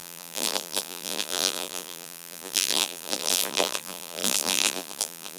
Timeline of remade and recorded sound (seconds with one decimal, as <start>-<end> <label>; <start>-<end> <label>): 0.0-5.4 remade